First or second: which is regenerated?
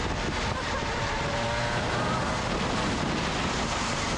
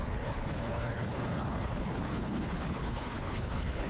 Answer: second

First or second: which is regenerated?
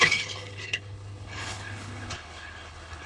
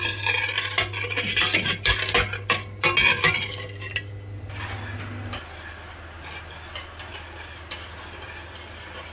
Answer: first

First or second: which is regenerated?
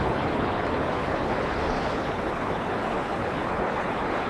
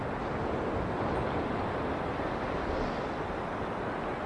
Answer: first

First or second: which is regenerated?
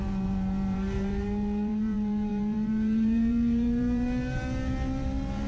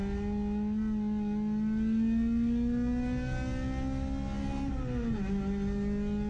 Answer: first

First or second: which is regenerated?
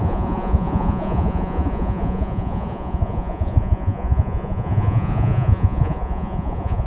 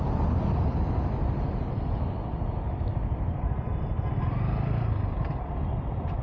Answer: first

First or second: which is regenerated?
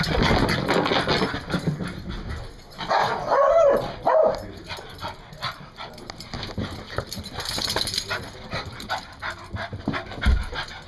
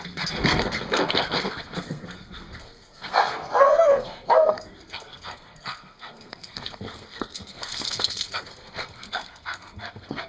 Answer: second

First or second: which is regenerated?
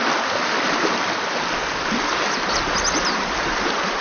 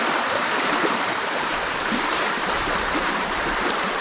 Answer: second